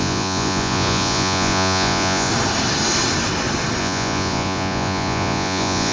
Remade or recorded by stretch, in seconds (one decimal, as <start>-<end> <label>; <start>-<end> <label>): 0.0-2.3 remade; 2.3-3.8 recorded; 3.8-5.9 remade